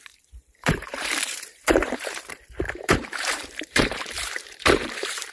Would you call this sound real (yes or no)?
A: no